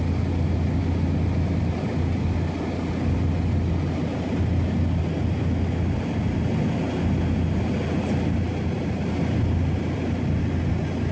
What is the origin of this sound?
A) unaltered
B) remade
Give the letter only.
A